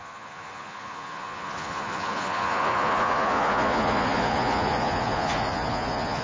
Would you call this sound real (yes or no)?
no